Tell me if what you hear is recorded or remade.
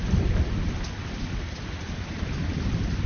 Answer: recorded